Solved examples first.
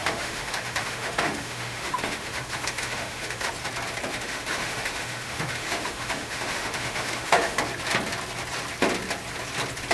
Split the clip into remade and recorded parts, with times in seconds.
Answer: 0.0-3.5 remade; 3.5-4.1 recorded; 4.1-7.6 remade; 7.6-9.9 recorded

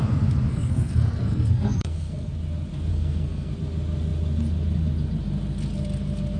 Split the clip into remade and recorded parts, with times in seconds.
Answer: 0.0-0.5 recorded; 0.5-2.3 remade; 2.3-2.9 recorded; 2.9-3.5 remade; 3.5-6.4 recorded

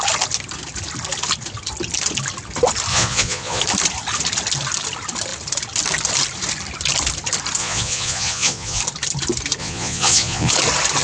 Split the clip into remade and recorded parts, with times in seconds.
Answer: 0.0-2.9 recorded; 2.9-3.6 remade; 3.6-7.6 recorded; 7.6-8.8 remade; 8.8-9.6 recorded; 9.6-10.5 remade; 10.5-11.0 recorded

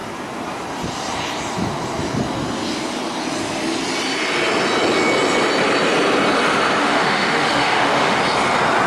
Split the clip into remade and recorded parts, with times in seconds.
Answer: 0.0-6.8 recorded; 6.8-8.2 remade; 8.2-8.9 recorded

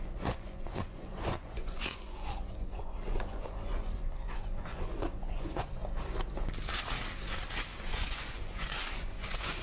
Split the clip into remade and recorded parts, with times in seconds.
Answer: 0.0-5.8 remade; 5.8-7.8 recorded; 7.8-9.6 remade

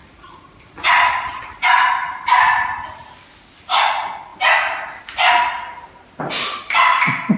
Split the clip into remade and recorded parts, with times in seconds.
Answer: 0.0-7.4 recorded

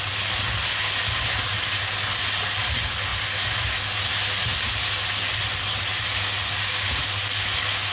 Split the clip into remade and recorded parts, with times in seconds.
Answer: 0.0-7.9 recorded